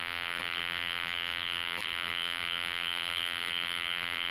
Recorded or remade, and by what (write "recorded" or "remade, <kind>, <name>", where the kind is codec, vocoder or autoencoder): remade, vocoder, BigVGAN v2